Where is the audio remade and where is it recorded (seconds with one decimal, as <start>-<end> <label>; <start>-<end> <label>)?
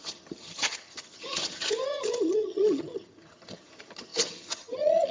0.0-5.1 remade